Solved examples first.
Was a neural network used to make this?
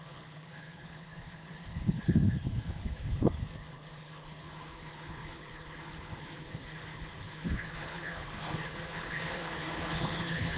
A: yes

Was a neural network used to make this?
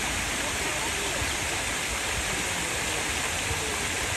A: no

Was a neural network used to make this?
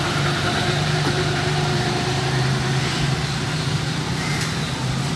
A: yes